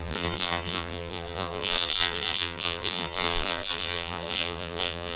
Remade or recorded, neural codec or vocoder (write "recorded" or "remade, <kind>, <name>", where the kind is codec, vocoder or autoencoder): remade, vocoder, BigVGAN v2